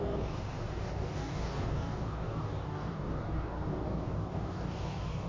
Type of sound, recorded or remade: remade